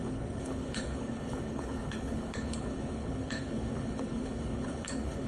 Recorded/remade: remade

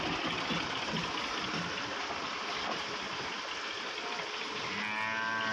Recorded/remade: recorded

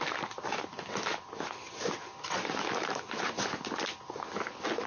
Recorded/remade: recorded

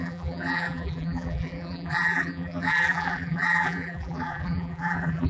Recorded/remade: remade